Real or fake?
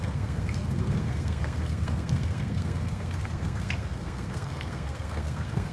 fake